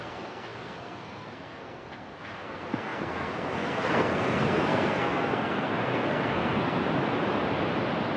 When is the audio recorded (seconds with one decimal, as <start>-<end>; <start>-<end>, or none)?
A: 6.8-8.2